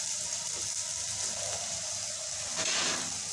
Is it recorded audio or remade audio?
recorded